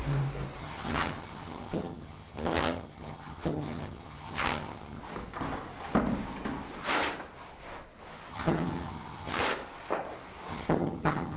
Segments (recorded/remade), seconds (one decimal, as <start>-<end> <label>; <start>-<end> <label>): 0.0-0.6 recorded; 0.6-5.0 remade; 5.0-8.3 recorded; 8.3-9.4 remade; 9.4-10.5 recorded; 10.5-11.4 remade

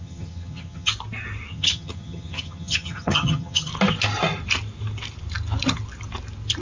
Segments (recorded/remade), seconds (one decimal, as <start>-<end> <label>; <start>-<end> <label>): 0.0-0.9 remade; 0.9-1.5 recorded; 1.5-3.7 remade; 3.7-6.6 recorded